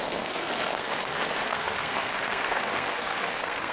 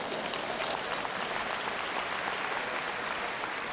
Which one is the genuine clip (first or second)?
second